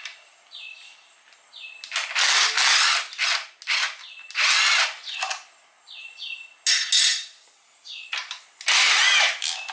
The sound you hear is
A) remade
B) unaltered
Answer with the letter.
B